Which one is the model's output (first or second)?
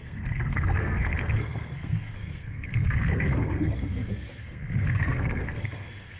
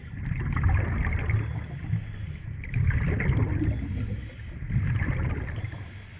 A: first